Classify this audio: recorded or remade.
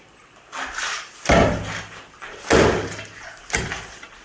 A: recorded